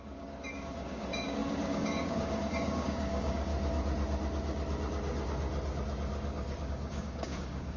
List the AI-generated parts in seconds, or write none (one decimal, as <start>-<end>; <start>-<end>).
0.0-3.5; 6.7-7.8